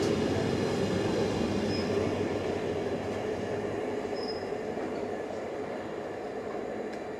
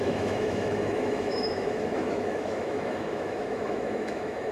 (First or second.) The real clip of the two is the first